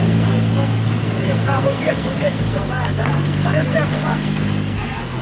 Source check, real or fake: fake